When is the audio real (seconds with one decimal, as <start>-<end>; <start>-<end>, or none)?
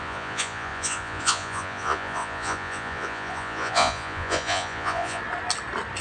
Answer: 5.2-6.0